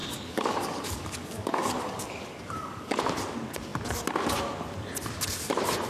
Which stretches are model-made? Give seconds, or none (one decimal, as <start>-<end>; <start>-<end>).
0.0-3.0